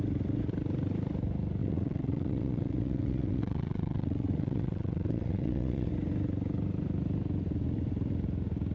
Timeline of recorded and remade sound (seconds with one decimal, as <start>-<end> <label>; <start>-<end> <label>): 0.0-1.6 recorded; 1.6-5.9 remade; 5.9-8.7 recorded